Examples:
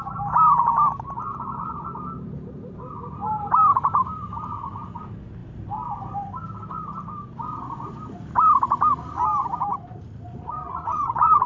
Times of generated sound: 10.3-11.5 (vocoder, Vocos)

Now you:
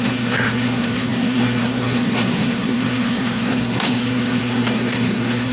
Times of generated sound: 0.0-5.5 (codec, SNAC)

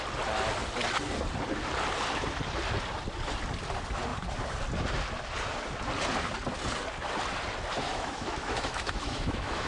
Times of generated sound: 7.9-9.7 (autoencoder, DAC-VAE)

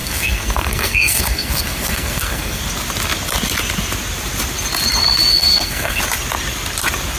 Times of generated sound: 0.0-2.6 (codec, SNAC); 5.3-6.0

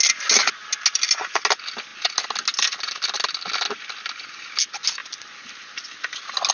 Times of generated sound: none